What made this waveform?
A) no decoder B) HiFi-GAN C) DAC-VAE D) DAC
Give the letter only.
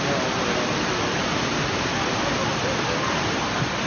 A